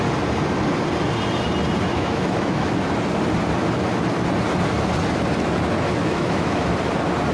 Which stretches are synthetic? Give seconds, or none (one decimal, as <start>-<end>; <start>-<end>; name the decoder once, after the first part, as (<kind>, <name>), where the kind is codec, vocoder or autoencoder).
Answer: 1.9-2.7 (autoencoder, DAC-VAE); 6.0-6.7